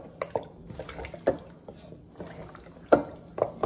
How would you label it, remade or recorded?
recorded